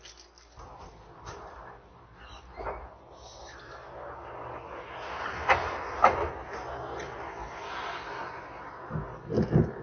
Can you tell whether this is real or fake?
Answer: real